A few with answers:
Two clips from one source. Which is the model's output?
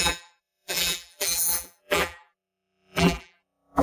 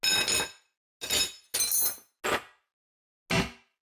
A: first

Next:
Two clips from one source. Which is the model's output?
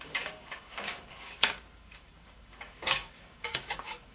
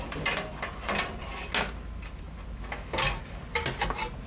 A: first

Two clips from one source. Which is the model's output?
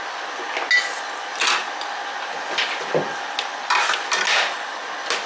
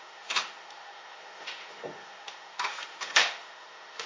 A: second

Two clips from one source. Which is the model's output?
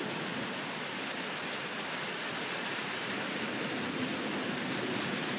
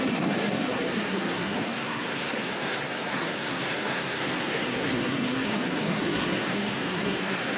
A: second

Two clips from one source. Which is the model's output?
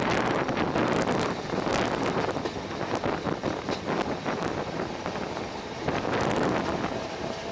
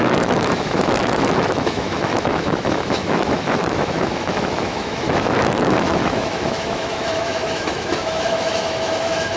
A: second